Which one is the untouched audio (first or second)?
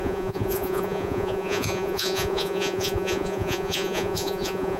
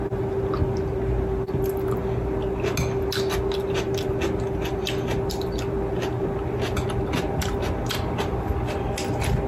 second